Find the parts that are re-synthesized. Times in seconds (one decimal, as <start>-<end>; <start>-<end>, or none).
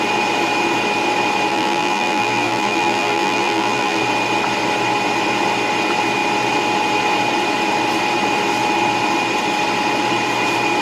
1.5-4.0